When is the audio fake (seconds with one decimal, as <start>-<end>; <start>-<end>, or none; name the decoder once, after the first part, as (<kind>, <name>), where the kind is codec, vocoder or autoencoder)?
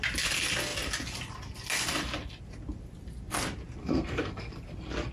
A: 3.8-4.5 (codec, SNAC)